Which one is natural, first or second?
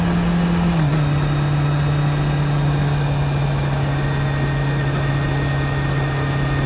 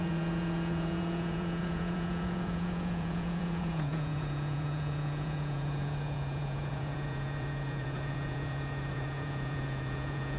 first